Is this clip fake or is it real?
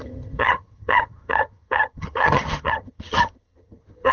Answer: fake